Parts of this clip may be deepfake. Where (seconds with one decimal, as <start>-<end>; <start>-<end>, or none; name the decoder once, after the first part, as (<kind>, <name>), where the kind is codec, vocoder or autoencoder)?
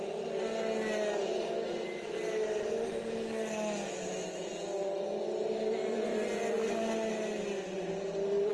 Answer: none